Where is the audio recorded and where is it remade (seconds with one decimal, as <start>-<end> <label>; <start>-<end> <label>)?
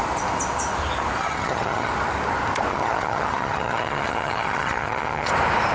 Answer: 0.0-1.2 recorded; 1.2-1.9 remade; 1.9-2.7 recorded; 2.7-5.3 remade; 5.3-5.7 recorded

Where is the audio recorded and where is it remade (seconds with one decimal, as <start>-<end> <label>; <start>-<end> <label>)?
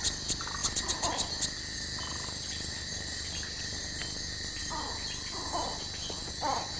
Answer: 0.0-6.8 recorded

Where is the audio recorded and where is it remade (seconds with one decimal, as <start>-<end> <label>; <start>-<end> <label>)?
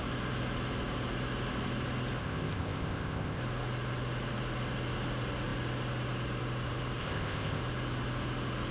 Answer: 0.0-2.2 recorded; 2.2-3.4 remade; 3.4-7.0 recorded; 7.0-7.6 remade; 7.6-8.7 recorded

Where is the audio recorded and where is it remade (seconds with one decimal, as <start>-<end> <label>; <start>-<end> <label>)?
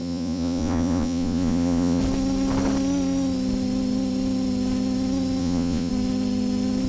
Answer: 0.0-2.0 remade; 2.0-5.4 recorded; 5.4-5.9 remade; 5.9-6.9 recorded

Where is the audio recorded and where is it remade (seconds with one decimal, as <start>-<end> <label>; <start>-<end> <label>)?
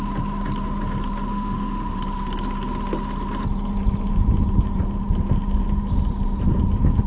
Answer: 0.0-1.3 recorded; 1.3-2.0 remade; 2.0-7.1 recorded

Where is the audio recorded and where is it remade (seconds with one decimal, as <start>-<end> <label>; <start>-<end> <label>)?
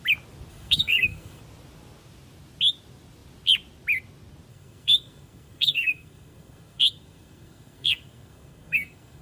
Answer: 0.0-0.5 recorded; 0.5-1.4 remade; 1.4-4.5 recorded; 4.5-9.2 remade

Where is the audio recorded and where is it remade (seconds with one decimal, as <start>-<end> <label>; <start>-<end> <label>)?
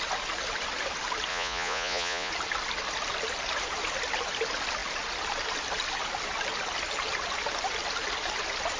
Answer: 0.0-1.3 recorded; 1.3-2.3 remade; 2.3-8.8 recorded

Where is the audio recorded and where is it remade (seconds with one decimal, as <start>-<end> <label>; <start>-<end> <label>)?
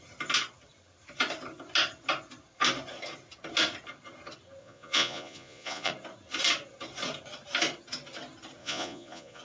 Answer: 0.0-4.6 recorded; 4.6-5.9 remade; 5.9-8.6 recorded; 8.6-9.4 remade